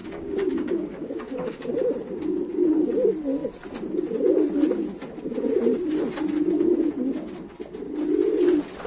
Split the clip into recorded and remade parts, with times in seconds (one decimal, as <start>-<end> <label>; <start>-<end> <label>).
0.0-1.6 remade; 1.6-8.9 recorded